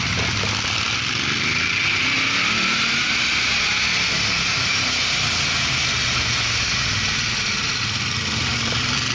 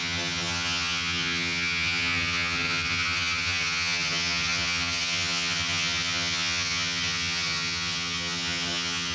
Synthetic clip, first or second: second